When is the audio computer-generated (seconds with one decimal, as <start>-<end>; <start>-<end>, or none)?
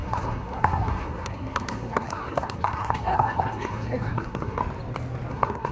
0.0-4.6; 5.3-5.7